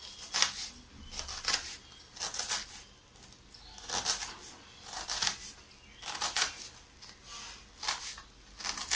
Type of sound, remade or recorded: recorded